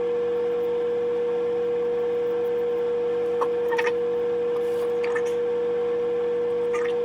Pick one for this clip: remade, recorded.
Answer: recorded